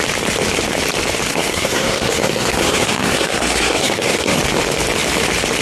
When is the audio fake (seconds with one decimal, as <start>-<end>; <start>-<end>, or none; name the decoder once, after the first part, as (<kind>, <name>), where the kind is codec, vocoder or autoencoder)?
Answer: 1.3-4.4 (codec, SNAC)